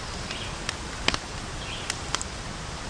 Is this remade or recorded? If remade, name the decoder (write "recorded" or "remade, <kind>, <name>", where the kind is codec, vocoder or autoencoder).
recorded